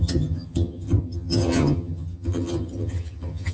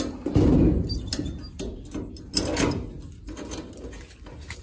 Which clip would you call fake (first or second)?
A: first